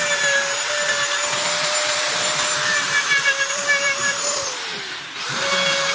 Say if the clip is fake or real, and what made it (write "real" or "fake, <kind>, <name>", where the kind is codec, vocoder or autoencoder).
fake, vocoder, BigVGAN v2